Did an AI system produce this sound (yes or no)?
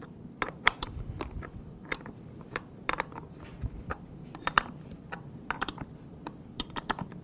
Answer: yes